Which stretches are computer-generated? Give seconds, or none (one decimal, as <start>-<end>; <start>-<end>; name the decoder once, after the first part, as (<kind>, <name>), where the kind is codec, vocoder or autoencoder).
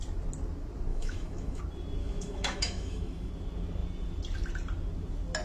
0.9-1.6 (autoencoder, DAC-VAE); 2.0-3.3